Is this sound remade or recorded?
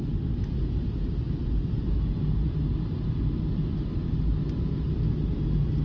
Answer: recorded